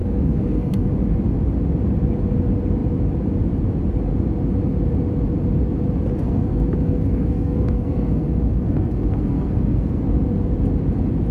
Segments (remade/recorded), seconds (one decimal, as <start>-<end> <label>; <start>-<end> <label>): 0.0-0.9 remade; 0.9-6.2 recorded; 6.2-10.0 remade; 10.0-11.3 recorded